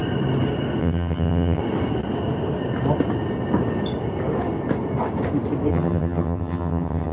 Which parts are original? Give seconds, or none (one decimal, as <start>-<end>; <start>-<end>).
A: 0.0-0.8; 1.6-5.7